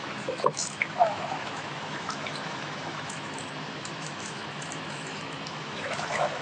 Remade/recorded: remade